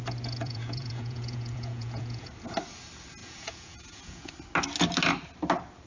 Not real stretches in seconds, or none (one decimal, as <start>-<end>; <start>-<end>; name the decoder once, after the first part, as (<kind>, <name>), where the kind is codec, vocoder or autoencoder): 0.4-2.3 (vocoder, Vocos); 3.2-4.3